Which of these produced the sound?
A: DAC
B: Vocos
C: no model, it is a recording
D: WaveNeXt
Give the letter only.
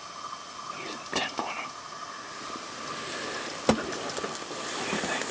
C